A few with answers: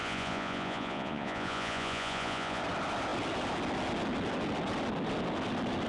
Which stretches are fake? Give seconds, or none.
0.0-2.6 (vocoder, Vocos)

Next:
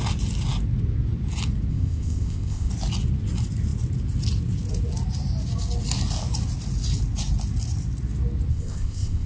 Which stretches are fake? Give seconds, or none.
1.7-2.7 (codec, ZipCodec); 8.5-9.3

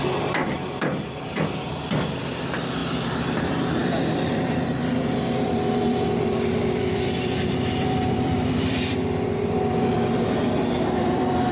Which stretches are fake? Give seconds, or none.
0.0-11.5 (vocoder, BigVGAN v2)

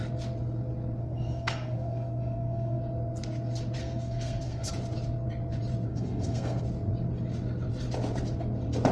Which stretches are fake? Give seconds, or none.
1.0-2.8 (codec, SNAC); 3.8-4.7; 5.9-6.6

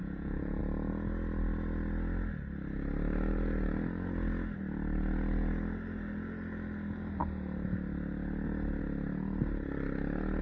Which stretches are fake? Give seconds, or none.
0.0-0.6 (vocoder, Vocos)